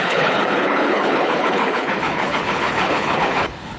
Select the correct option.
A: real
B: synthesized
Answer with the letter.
B